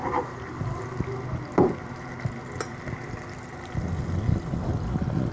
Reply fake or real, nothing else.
real